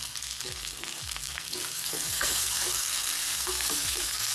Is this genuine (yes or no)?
no